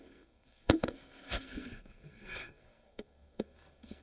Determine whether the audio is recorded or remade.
remade